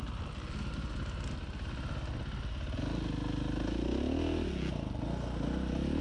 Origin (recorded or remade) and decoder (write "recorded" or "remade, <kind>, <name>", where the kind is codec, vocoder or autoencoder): recorded